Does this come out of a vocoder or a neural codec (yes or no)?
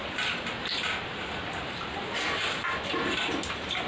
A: no